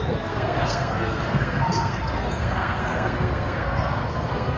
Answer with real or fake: fake